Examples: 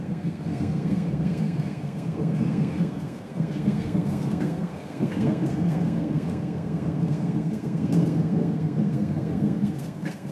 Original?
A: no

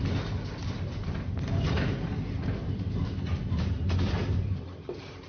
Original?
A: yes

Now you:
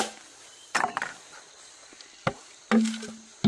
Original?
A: yes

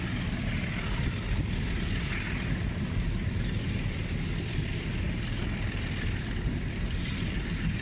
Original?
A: yes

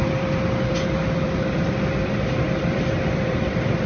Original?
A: no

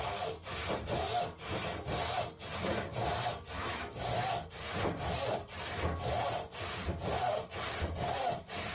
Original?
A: yes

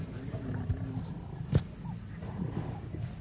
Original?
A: yes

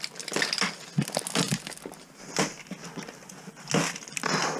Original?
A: yes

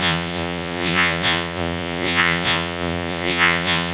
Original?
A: no